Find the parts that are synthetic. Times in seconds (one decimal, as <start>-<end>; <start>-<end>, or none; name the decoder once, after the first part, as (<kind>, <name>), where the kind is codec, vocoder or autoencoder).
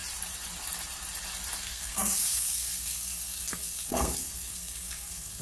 1.6-5.4 (codec, SNAC)